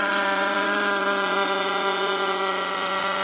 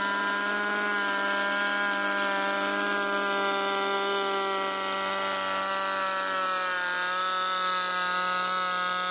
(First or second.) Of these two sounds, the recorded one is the second